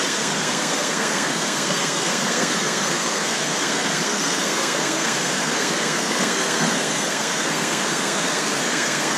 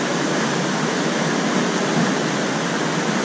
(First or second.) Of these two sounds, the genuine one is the second